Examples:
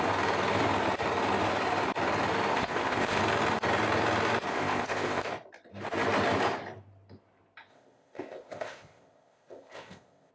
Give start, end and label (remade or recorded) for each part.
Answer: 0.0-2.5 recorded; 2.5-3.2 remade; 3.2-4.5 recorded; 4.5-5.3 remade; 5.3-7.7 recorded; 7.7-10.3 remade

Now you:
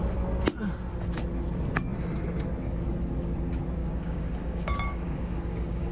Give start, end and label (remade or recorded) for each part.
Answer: 0.0-3.8 recorded; 3.8-5.9 remade

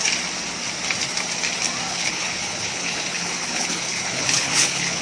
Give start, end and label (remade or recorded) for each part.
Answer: 0.0-1.9 recorded; 1.9-5.0 remade

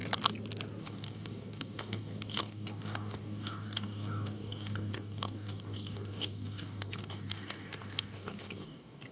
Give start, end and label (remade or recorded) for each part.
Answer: 0.0-0.8 recorded; 0.8-9.1 remade